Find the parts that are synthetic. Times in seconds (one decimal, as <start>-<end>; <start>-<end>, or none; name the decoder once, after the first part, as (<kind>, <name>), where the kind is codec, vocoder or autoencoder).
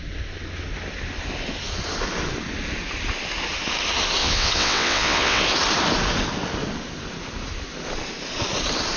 4.2-5.4 (vocoder, WaveNeXt)